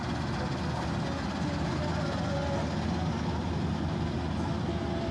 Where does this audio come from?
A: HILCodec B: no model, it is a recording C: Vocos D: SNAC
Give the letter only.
B